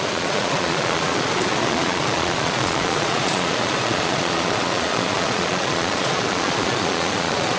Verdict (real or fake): fake